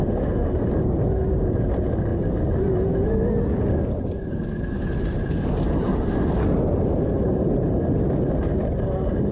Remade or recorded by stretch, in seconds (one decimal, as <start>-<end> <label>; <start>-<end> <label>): 0.0-9.3 recorded